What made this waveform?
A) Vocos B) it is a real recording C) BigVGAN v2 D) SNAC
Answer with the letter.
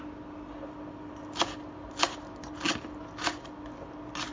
B